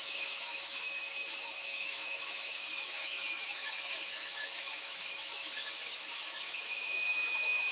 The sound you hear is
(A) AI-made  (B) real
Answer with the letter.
A